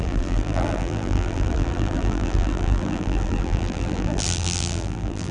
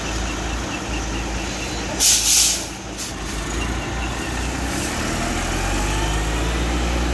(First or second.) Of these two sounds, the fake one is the first